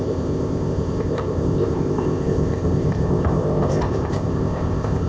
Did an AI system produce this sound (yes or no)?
yes